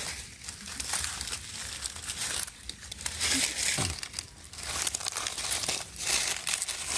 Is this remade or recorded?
recorded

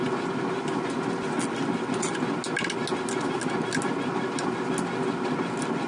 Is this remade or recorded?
recorded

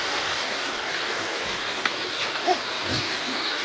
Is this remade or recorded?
remade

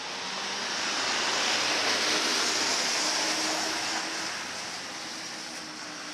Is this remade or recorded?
recorded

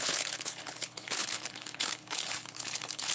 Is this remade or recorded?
remade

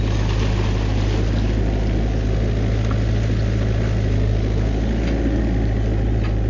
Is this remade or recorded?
recorded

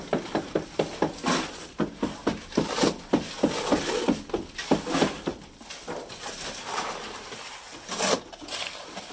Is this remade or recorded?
recorded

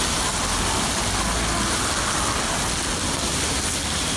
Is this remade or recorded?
recorded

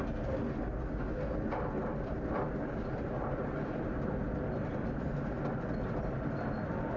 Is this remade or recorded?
recorded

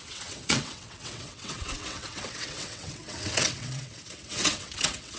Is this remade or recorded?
remade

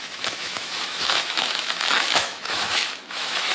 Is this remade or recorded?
remade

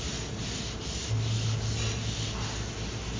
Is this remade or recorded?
recorded